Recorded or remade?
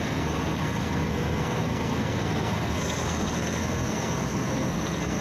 remade